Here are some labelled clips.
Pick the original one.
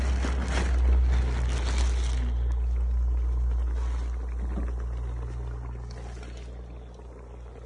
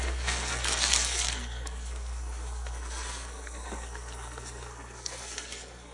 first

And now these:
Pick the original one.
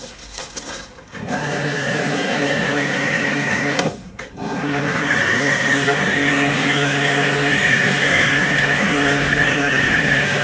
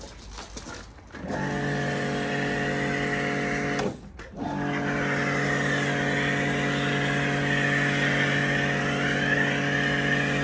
second